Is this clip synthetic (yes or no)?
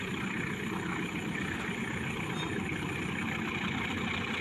no